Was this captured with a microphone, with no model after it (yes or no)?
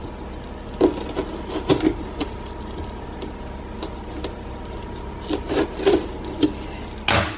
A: yes